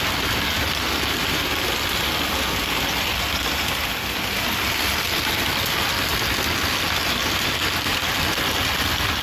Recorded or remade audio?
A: recorded